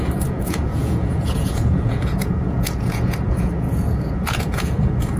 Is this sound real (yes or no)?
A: no